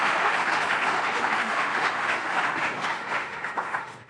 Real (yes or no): no